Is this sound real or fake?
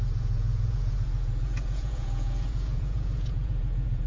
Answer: fake